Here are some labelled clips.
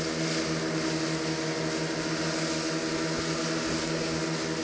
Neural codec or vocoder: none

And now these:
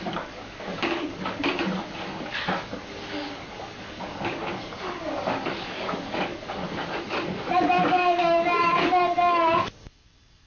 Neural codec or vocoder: codec, DAC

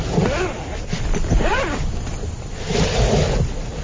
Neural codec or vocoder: none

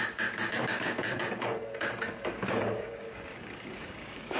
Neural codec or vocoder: codec, DAC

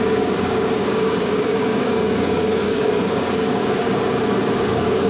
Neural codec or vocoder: codec, DAC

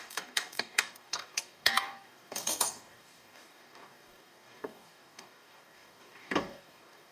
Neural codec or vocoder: codec, DAC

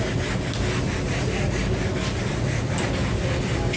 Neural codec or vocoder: none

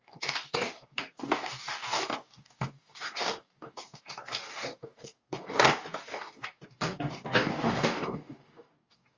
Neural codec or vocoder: codec, DAC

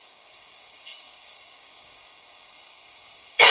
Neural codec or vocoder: codec, DAC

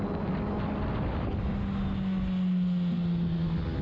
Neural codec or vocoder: none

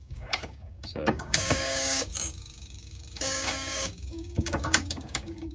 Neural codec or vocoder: codec, DAC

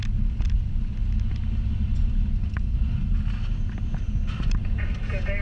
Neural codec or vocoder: none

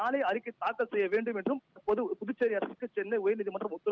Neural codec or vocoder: none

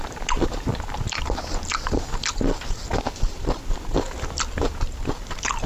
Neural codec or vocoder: none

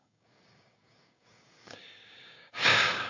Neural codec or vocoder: codec, DAC